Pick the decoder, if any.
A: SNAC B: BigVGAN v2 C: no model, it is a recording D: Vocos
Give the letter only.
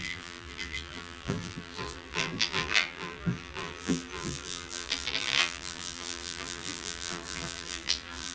B